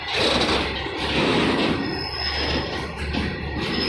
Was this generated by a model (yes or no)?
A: no